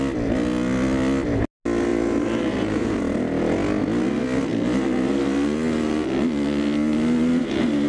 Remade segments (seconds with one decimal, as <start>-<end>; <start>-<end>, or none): 1.9-3.0; 7.4-7.9